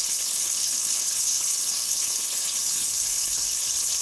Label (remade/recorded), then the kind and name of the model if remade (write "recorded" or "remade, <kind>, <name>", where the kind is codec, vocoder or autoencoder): remade, codec, HILCodec